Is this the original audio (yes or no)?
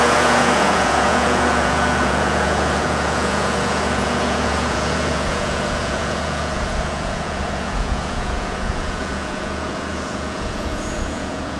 no